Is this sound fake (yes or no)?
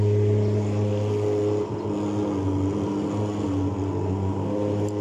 no